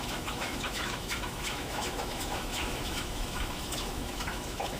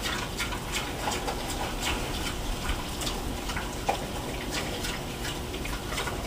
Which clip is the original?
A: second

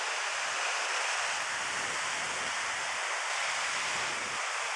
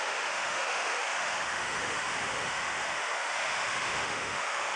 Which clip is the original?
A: first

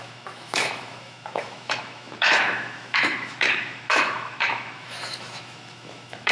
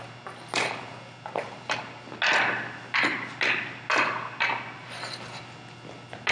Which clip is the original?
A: second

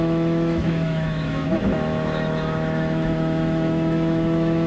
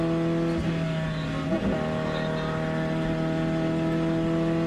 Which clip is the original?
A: second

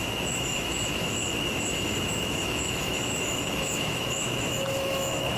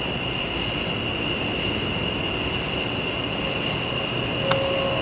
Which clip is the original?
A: second